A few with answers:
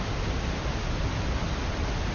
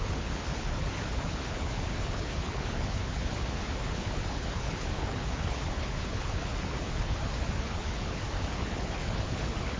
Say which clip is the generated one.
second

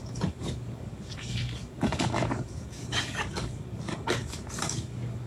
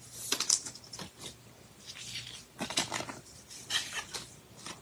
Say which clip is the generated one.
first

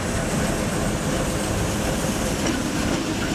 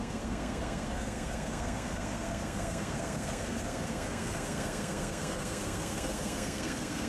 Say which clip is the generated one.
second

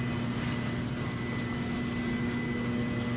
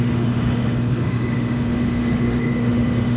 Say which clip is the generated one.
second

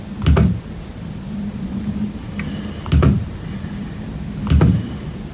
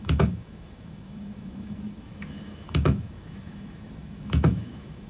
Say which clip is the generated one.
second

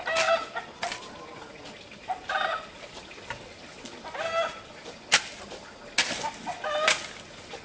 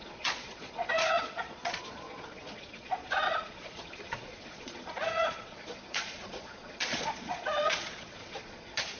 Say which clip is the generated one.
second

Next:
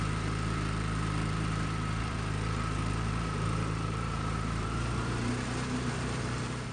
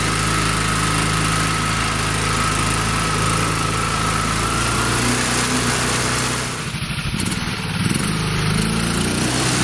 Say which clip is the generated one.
first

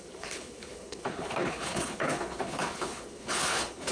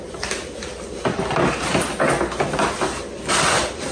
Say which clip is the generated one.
first